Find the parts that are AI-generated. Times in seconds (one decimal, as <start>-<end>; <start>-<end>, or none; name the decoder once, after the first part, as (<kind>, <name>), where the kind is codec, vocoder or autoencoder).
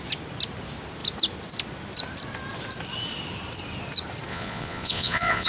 4.3-5.5 (vocoder, Vocos)